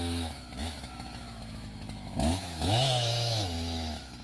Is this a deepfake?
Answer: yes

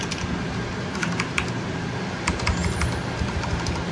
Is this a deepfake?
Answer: no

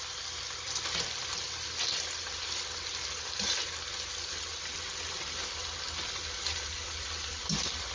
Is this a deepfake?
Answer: no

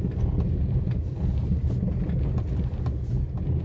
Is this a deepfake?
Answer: no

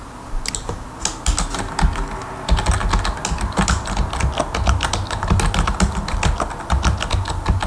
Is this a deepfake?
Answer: no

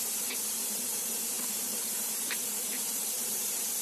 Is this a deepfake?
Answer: yes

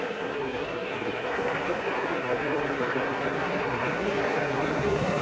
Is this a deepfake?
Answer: yes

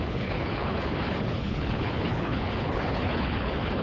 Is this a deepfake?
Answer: yes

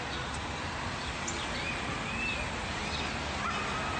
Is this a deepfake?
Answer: no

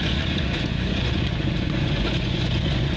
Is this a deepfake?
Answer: yes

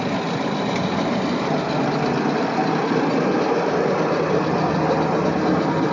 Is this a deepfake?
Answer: no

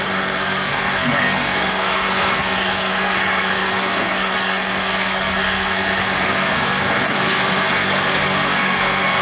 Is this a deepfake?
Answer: yes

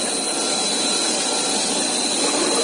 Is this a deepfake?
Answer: no